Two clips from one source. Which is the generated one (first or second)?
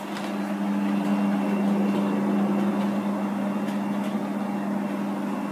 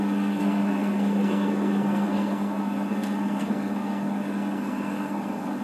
second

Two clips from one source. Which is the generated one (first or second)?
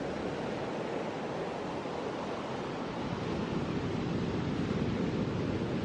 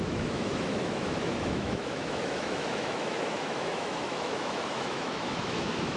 second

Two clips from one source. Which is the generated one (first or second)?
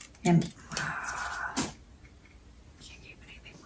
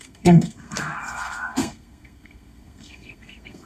second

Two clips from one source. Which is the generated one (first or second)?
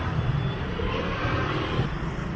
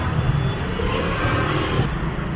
first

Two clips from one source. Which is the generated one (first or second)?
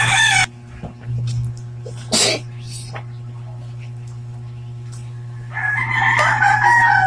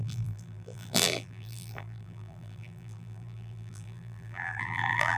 second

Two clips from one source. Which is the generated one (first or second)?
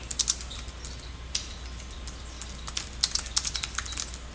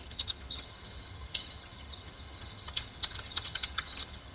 second